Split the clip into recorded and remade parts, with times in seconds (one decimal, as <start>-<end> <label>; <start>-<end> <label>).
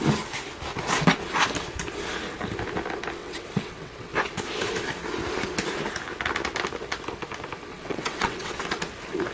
0.0-3.2 recorded; 3.2-4.1 remade; 4.1-7.7 recorded; 7.7-8.6 remade; 8.6-9.3 recorded